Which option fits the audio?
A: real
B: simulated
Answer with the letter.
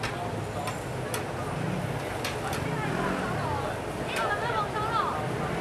A